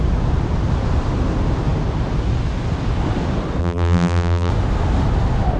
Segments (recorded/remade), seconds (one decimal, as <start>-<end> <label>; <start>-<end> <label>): 0.0-3.6 recorded; 3.6-4.5 remade; 4.5-5.6 recorded